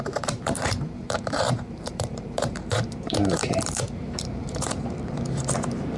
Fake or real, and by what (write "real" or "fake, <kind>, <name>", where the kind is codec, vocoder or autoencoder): fake, vocoder, BigVGAN v2